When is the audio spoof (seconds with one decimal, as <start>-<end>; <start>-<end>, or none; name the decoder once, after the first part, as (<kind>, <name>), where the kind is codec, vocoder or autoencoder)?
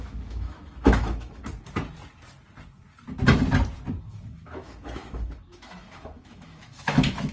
0.0-1.4 (autoencoder, DAC-VAE); 4.0-7.3